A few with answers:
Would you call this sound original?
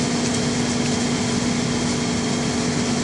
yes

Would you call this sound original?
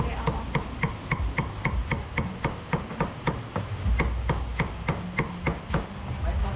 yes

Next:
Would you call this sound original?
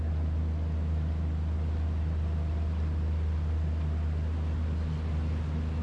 yes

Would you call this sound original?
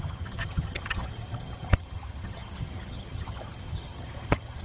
no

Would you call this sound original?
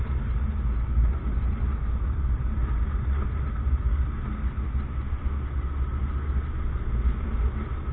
yes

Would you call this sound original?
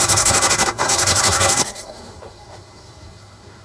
no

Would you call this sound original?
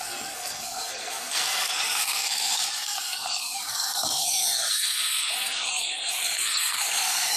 no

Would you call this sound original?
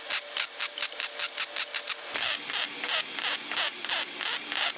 yes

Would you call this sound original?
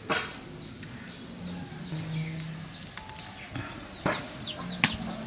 yes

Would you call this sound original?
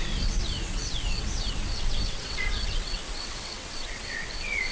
no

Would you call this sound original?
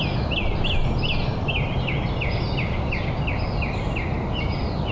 yes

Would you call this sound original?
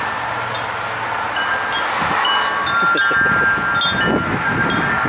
yes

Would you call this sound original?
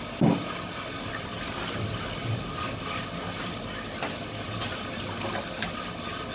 yes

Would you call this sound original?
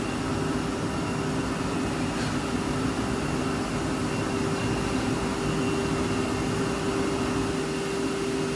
yes